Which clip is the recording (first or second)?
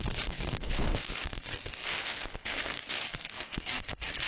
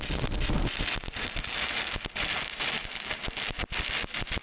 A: second